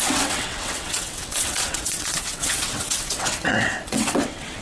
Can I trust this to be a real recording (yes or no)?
no